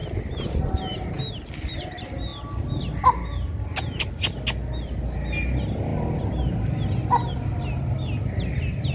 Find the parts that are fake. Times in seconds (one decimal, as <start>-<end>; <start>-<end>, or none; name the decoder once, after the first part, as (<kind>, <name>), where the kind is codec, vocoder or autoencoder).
none